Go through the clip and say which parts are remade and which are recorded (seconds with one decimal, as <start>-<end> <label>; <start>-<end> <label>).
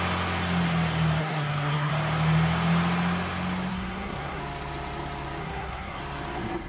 0.0-1.2 recorded; 1.2-1.9 remade; 1.9-3.7 recorded; 3.7-4.4 remade; 4.4-5.4 recorded; 5.4-6.0 remade; 6.0-6.7 recorded